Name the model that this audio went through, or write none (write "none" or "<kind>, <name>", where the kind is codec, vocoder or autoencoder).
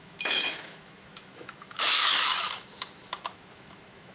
autoencoder, DAC-VAE